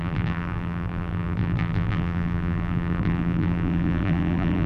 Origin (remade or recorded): remade